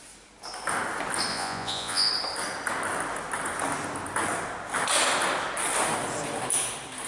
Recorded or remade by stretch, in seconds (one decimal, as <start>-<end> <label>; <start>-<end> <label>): 0.0-1.3 recorded; 1.3-2.1 remade; 2.1-7.1 recorded